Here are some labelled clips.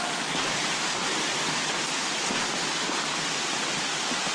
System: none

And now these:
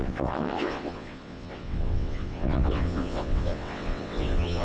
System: vocoder, WaveNeXt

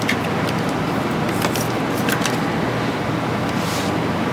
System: none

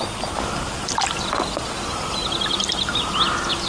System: none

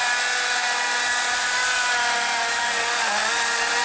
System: none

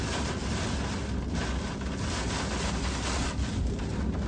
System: none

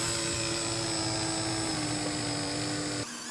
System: none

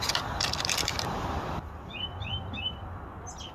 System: vocoder, BigVGAN v2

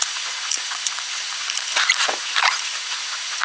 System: vocoder, Vocos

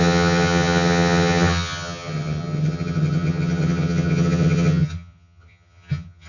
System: vocoder, HiFi-GAN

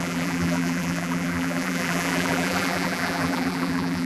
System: vocoder, BigVGAN v2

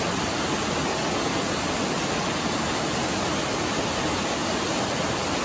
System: none